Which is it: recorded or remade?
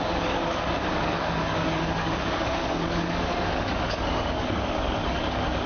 remade